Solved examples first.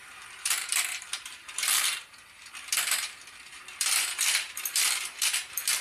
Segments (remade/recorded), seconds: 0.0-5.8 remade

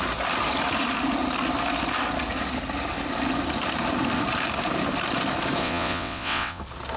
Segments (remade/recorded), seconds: 0.0-5.6 recorded; 5.6-6.6 remade; 6.6-7.0 recorded

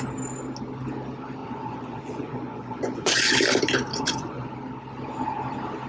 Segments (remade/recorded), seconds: 0.0-1.4 recorded; 1.4-3.3 remade; 3.3-3.9 recorded; 3.9-4.5 remade; 4.5-5.9 recorded

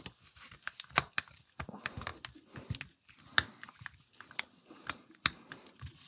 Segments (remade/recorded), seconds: 0.0-6.1 recorded

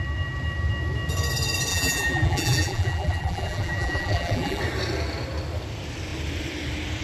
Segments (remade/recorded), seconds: 0.0-1.7 recorded; 1.7-4.6 remade; 4.6-7.0 recorded

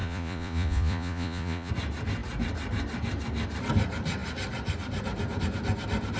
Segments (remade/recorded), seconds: 0.0-1.7 remade; 1.7-6.2 recorded